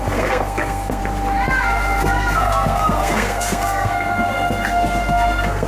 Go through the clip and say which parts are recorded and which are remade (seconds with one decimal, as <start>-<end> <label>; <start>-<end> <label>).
0.0-1.0 remade; 1.0-1.5 recorded; 1.5-5.7 remade